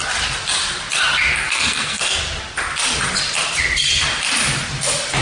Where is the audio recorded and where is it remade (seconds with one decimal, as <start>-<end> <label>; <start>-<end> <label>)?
0.0-1.3 recorded; 1.3-2.2 remade; 2.2-5.2 recorded